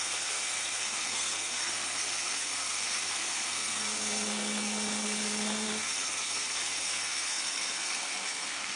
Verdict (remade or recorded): remade